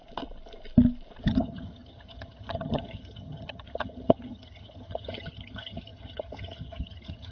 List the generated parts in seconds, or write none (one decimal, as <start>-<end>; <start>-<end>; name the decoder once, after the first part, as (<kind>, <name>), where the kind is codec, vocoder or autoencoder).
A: 1.2-7.3 (vocoder, HiFi-GAN)

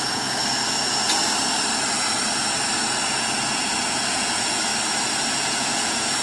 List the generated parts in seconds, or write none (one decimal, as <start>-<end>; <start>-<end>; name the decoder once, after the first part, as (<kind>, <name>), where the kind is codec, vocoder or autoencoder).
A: 0.0-0.4 (vocoder, Vocos); 2.8-4.7; 5.4-6.2

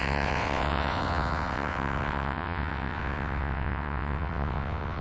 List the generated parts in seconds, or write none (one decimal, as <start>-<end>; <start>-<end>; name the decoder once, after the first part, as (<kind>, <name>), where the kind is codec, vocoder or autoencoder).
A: 0.0-5.0 (vocoder, WaveNeXt)

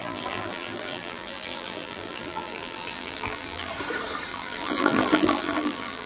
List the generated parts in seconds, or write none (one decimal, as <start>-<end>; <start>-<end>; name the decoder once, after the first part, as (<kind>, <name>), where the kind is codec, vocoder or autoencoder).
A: 0.0-3.7 (vocoder, BigVGAN v2); 4.3-6.1

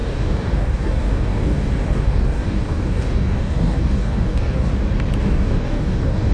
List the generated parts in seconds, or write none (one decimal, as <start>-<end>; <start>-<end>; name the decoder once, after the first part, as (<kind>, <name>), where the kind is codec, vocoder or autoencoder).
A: 0.0-4.7 (codec, DAC); 5.2-6.3

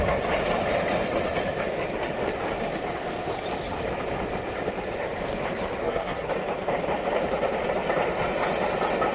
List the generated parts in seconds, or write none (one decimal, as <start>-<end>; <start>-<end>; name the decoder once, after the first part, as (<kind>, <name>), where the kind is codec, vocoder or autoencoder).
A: 5.8-6.3 (codec, SNAC)